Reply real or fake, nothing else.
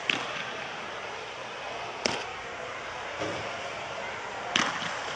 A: fake